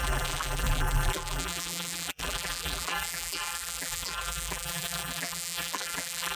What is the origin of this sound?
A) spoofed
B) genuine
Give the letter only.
A